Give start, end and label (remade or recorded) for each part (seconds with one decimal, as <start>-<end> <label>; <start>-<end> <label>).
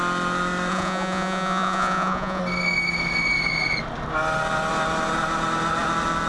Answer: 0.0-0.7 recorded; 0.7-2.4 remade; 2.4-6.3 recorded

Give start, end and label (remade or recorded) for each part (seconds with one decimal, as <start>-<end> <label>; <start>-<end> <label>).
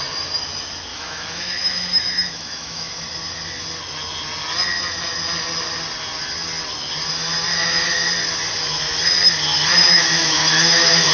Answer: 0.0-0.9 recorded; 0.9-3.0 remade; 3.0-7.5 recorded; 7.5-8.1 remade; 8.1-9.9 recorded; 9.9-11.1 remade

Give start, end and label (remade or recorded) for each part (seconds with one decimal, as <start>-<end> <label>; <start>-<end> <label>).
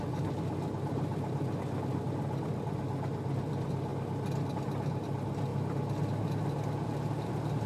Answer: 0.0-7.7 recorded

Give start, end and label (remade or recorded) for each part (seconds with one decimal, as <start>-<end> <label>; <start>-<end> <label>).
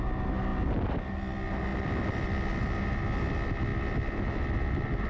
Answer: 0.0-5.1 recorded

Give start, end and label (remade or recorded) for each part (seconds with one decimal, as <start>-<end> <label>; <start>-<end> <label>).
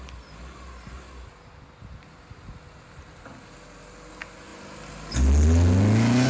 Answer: 0.0-6.3 recorded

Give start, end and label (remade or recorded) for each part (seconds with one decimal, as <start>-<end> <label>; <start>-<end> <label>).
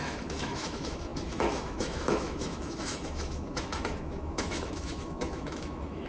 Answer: 0.0-6.1 remade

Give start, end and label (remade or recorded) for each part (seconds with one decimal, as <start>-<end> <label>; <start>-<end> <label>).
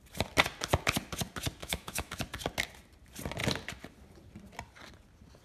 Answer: 0.0-1.6 recorded; 1.6-2.2 remade; 2.2-5.4 recorded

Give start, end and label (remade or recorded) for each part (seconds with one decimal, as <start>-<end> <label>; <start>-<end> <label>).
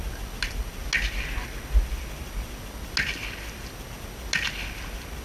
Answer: 0.0-5.2 recorded